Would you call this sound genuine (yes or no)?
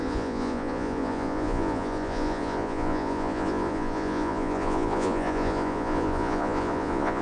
no